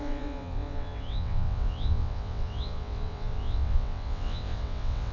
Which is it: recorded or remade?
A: remade